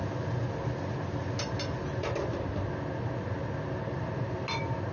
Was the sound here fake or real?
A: real